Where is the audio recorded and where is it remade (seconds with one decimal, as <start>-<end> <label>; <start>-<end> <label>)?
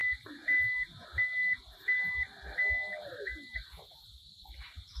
0.0-5.0 recorded